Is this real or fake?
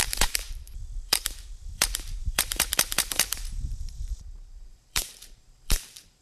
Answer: fake